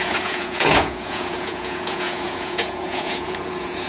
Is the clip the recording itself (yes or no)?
no